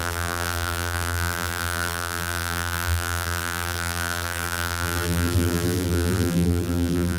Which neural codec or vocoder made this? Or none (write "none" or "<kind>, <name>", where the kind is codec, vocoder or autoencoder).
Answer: vocoder, BigVGAN v2